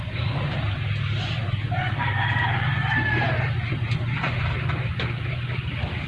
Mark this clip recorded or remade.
remade